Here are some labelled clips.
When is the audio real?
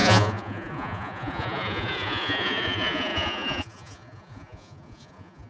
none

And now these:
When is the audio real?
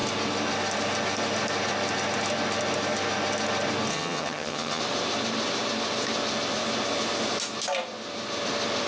0.0-3.9; 4.8-8.9